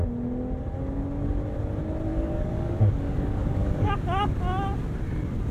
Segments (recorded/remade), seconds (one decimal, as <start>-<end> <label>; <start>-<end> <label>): 0.0-2.1 recorded; 2.1-4.0 remade; 4.0-5.5 recorded